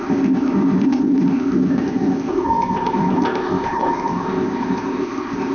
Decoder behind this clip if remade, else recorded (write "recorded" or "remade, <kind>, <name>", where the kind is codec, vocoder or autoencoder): remade, codec, ZipCodec